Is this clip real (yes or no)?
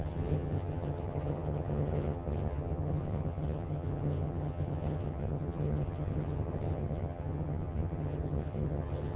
no